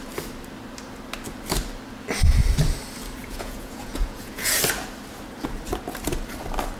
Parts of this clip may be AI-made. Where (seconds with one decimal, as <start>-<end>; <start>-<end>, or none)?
3.2-4.6